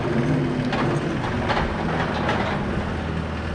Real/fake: real